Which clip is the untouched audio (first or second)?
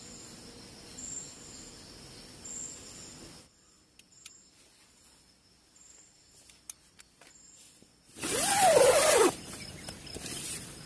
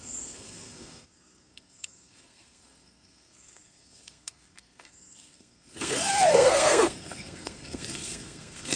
first